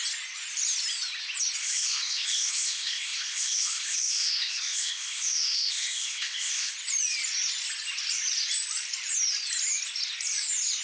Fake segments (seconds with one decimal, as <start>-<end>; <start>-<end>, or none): 1.6-6.7